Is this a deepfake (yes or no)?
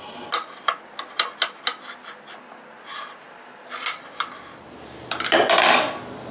no